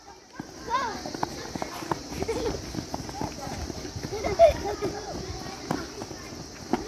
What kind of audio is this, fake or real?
real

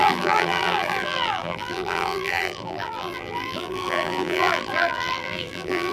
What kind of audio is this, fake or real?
fake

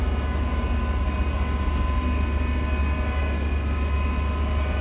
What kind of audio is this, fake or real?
real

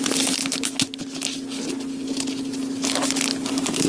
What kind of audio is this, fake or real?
real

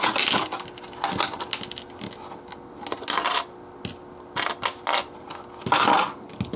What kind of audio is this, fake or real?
real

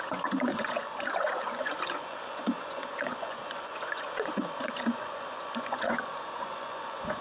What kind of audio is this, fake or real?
fake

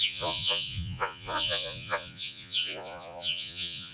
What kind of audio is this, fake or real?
fake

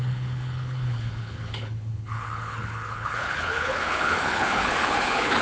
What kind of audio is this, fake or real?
fake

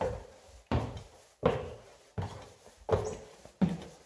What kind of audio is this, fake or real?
real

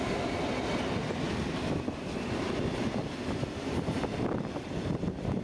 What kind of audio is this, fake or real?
real